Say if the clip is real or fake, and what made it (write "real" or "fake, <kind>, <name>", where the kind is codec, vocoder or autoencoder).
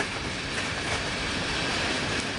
real